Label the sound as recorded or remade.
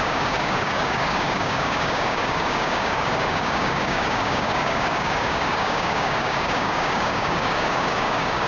remade